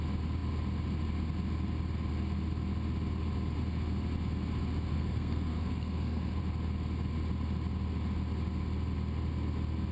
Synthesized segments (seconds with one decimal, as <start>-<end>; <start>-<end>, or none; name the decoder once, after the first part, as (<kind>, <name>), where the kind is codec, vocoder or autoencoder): 4.9-6.4 (codec, SNAC)